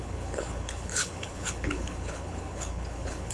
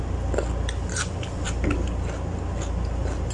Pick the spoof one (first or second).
first